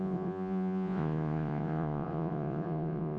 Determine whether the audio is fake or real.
fake